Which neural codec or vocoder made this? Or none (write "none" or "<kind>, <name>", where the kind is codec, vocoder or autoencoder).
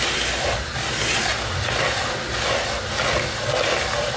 none